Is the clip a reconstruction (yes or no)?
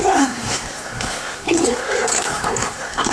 yes